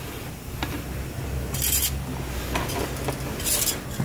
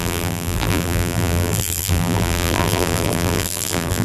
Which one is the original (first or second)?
first